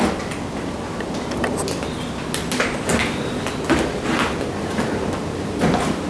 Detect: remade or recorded recorded